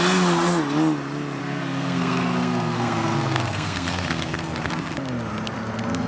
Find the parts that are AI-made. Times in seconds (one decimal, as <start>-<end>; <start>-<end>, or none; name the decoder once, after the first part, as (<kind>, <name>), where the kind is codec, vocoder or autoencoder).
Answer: 1.4-4.7 (codec, SNAC)